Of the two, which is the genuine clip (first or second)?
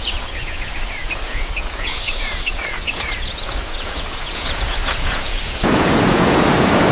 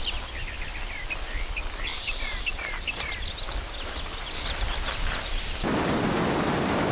second